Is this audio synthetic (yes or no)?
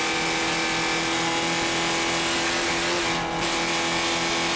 no